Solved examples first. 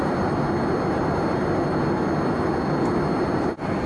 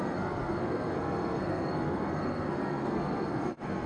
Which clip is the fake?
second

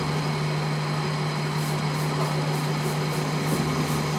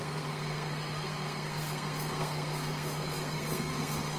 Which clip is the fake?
second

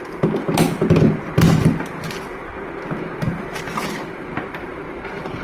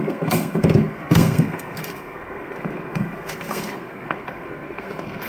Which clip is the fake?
second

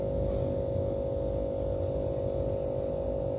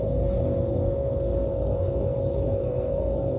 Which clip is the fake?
second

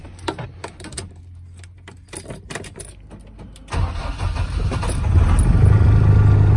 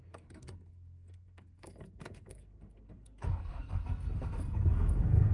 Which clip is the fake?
second